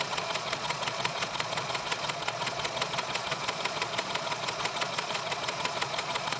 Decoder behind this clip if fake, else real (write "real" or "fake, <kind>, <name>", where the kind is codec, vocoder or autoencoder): fake, vocoder, Vocos